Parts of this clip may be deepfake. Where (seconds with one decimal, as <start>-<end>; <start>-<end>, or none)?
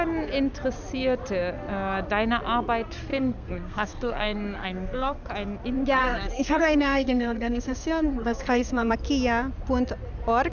3.1-5.3; 6.0-8.9